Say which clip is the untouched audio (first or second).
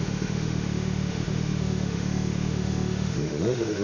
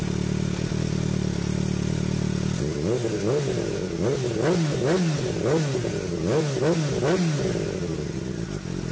second